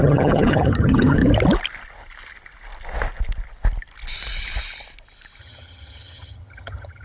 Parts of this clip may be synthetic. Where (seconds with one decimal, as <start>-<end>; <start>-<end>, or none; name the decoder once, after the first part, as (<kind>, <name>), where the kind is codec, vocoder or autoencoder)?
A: 0.0-1.2 (vocoder, HiFi-GAN); 5.4-7.0